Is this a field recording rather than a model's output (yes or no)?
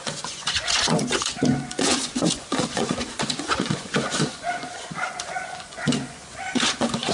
no